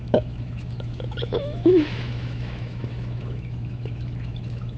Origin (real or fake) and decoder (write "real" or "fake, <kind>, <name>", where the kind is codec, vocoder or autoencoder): fake, autoencoder, DAC-VAE